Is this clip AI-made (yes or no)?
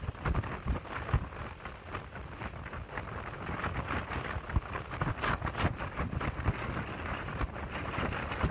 no